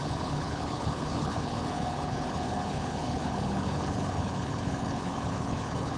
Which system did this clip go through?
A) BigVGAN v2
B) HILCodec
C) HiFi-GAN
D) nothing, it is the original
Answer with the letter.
B